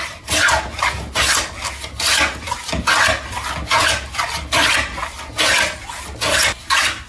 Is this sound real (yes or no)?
yes